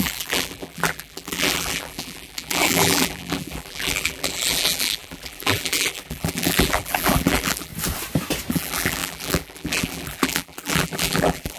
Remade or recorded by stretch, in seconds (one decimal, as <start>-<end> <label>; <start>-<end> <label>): 0.0-7.7 remade; 7.7-8.5 recorded; 8.5-11.6 remade